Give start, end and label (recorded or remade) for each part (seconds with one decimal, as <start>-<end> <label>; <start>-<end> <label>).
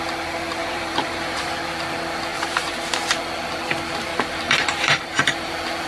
0.0-0.6 recorded; 0.6-1.5 remade; 1.5-2.3 recorded; 2.3-2.9 remade; 2.9-4.1 recorded; 4.1-5.5 remade; 5.5-5.9 recorded